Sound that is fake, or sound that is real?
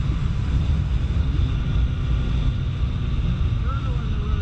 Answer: real